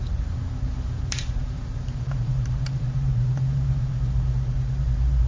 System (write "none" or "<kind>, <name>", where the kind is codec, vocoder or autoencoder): vocoder, BigVGAN v2